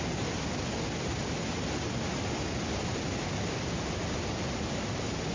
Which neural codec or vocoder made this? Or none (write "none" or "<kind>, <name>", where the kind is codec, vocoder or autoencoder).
none